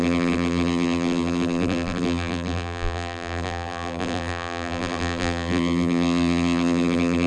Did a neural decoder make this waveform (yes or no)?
yes